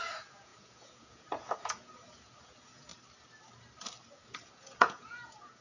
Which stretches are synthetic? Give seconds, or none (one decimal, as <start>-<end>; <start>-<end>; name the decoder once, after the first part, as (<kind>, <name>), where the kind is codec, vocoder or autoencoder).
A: 0.0-2.9 (vocoder, Vocos); 4.0-5.6